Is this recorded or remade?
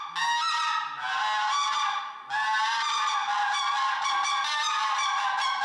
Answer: recorded